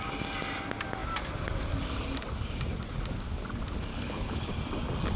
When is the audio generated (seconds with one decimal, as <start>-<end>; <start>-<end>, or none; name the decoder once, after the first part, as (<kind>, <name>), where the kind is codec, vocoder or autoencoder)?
3.9-4.5 (codec, HILCodec)